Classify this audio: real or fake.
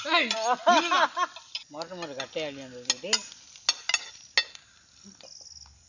real